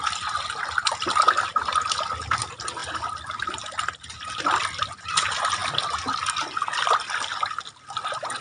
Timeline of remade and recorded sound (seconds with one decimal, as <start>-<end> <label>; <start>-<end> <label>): 0.0-8.4 recorded